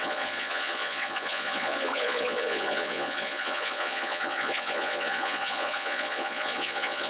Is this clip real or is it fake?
fake